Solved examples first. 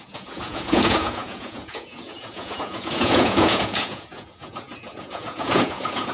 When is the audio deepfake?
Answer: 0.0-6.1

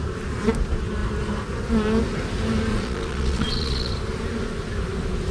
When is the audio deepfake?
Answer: 2.7-3.9

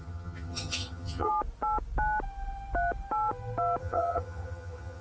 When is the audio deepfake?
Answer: 0.0-1.3; 3.8-5.0

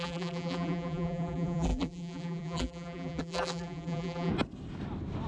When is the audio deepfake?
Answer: 0.0-4.3

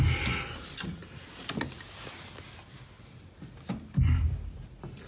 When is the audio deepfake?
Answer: none

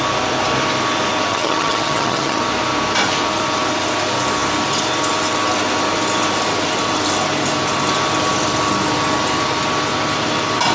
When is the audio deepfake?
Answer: 1.3-2.4

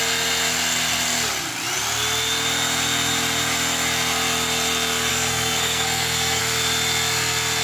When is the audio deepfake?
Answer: 5.1-6.4

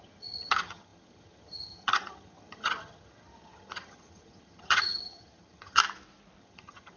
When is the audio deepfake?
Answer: 0.0-5.8; 6.4-7.0